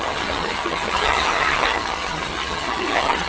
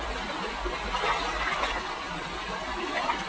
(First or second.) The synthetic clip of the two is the first